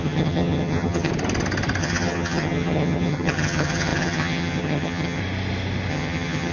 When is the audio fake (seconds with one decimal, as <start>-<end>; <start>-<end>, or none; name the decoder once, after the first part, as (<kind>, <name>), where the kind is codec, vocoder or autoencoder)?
0.0-1.1 (vocoder, HiFi-GAN); 1.8-5.2; 5.9-6.5